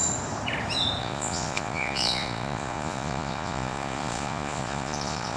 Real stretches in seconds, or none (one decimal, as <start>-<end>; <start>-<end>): 0.0-1.0